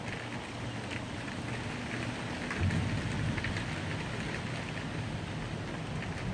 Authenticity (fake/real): real